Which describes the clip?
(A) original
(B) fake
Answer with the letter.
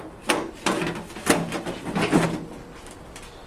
A